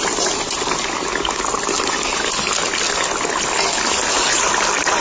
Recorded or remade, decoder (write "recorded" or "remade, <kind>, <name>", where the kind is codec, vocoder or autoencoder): recorded